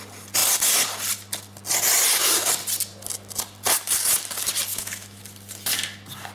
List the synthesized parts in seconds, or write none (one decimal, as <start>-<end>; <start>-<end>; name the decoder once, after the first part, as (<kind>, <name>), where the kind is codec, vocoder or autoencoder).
4.7-5.2 (autoencoder, DAC-VAE)